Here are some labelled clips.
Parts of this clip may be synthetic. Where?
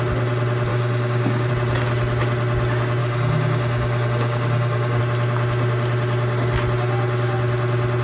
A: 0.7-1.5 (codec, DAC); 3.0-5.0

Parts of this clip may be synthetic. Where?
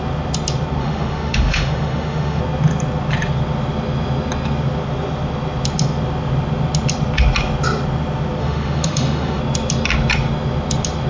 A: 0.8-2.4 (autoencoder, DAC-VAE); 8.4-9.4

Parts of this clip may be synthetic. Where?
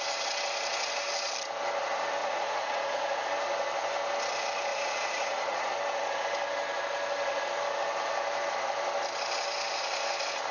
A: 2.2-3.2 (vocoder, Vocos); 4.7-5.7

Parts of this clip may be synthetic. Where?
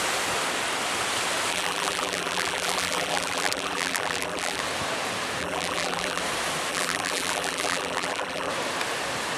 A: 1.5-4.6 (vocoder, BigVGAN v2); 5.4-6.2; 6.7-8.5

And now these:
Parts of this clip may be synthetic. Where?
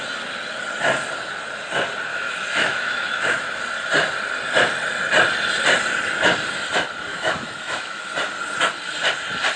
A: 2.1-3.6 (autoencoder, DAC-VAE); 7.1-8.1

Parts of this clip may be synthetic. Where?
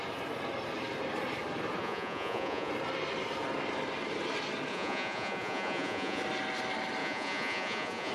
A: 1.8-2.7 (vocoder, Vocos); 4.7-6.2; 7.0-8.1